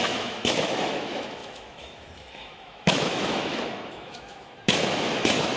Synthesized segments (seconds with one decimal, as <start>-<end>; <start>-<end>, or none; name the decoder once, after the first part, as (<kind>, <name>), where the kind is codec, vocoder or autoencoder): 0.0-5.6 (autoencoder, DAC-VAE)